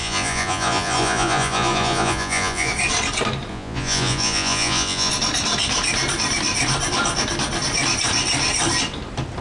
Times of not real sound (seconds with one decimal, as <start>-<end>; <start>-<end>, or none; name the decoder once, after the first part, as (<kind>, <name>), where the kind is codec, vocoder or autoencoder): 0.0-2.7 (vocoder, Vocos); 3.5-5.1

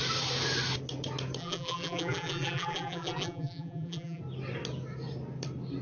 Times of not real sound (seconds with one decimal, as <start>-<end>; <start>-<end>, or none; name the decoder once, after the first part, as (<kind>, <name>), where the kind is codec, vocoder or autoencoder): 1.4-4.2 (vocoder, BigVGAN v2)